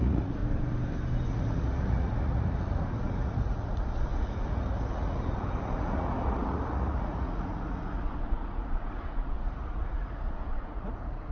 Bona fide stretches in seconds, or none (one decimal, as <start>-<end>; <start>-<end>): 0.4-1.3